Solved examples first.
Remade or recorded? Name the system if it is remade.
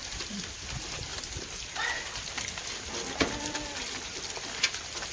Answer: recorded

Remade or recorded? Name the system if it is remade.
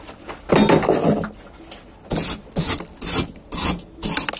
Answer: recorded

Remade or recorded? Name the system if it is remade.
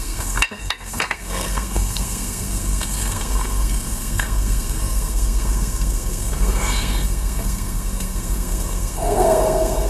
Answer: remade, codec, SNAC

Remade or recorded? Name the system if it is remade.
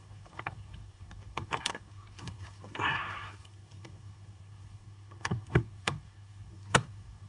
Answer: remade, codec, SNAC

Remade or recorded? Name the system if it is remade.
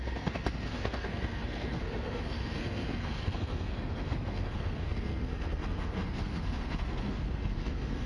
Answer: remade, codec, SNAC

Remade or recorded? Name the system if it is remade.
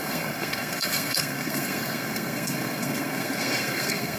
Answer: remade, codec, SNAC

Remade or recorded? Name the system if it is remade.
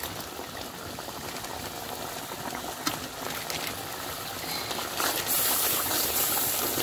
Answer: recorded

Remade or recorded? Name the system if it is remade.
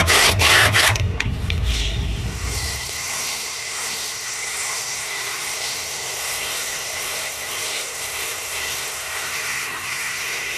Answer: remade, codec, SNAC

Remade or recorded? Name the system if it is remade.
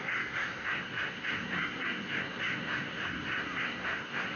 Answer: remade, codec, SNAC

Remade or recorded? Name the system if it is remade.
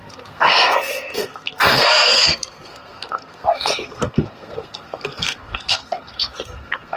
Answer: remade, codec, SNAC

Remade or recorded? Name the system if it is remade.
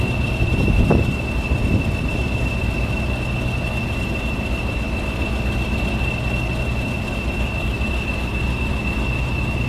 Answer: recorded